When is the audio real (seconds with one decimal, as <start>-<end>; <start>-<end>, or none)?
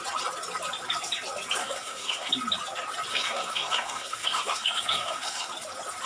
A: 0.0-1.6; 2.3-3.1; 5.5-6.1